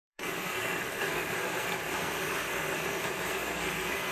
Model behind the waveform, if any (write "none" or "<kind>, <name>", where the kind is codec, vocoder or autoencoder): codec, SNAC